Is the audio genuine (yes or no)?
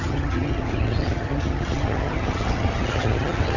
no